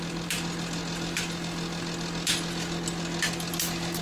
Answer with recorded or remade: recorded